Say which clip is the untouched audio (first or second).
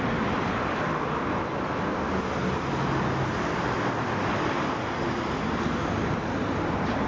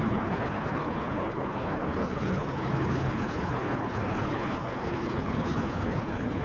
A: first